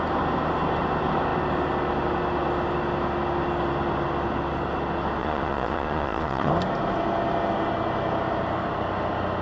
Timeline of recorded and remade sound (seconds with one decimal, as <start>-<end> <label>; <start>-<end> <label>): 0.0-5.2 recorded; 5.2-6.5 remade; 6.5-9.4 recorded